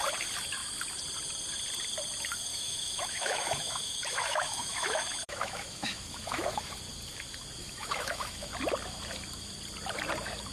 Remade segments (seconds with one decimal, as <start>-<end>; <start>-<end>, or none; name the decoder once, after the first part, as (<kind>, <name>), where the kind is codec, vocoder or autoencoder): 2.5-6.8 (autoencoder, DAC-VAE); 7.6-8.5